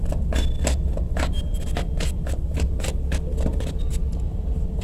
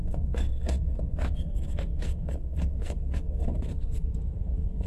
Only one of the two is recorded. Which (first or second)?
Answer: first